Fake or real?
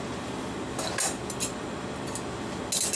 real